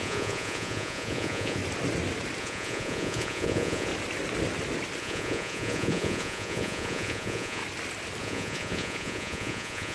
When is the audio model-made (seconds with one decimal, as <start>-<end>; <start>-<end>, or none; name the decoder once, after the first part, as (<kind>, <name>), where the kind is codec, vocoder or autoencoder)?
0.0-1.6 (vocoder, Vocos); 2.4-3.9; 5.0-7.6; 8.2-9.9